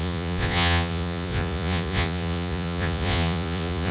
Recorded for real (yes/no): no